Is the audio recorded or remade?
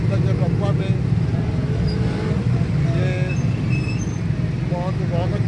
recorded